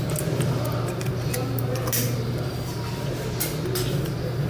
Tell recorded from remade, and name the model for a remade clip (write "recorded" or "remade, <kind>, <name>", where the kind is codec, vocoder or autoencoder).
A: recorded